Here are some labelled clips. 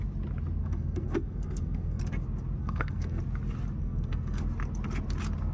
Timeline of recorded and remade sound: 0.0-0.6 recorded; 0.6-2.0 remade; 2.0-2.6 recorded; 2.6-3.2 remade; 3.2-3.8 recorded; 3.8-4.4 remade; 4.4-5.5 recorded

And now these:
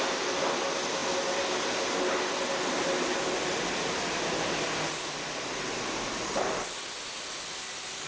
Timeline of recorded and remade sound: 0.0-8.1 recorded